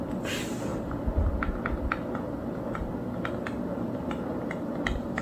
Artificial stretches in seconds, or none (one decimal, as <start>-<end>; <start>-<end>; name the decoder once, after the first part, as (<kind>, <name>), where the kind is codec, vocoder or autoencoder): none